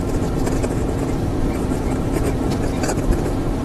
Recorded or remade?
remade